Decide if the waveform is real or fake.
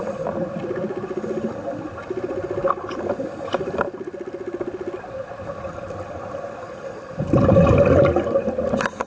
real